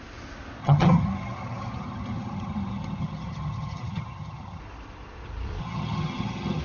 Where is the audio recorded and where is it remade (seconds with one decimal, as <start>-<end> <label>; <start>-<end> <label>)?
0.0-0.6 recorded; 0.6-4.6 remade; 4.6-5.6 recorded; 5.6-6.6 remade